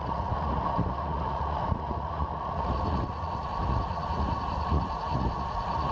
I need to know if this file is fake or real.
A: fake